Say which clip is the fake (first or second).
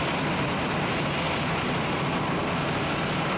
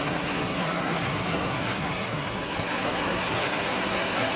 second